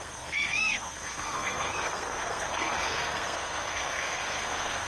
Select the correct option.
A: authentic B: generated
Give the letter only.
B